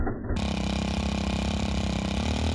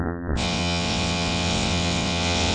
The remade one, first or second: second